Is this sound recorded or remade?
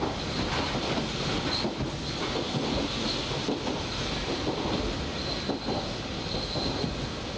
recorded